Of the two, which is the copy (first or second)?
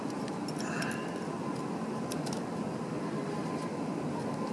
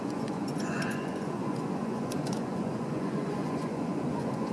second